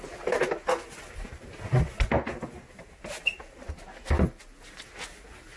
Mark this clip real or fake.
real